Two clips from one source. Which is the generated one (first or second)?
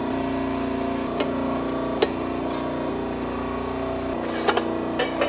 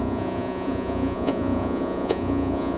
second